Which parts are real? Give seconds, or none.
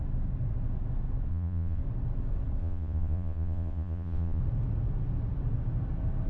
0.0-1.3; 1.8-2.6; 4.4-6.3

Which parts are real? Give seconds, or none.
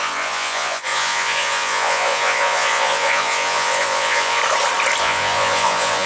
4.4-5.0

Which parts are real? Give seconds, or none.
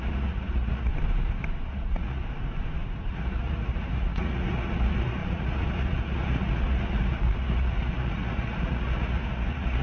0.9-1.7; 2.2-3.1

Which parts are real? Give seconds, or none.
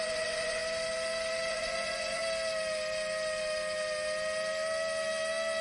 0.6-1.5; 2.2-5.6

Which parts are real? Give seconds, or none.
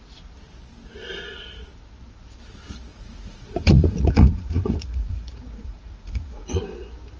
0.0-2.9; 6.6-7.2